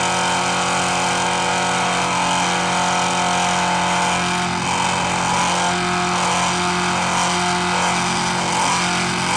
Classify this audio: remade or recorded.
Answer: recorded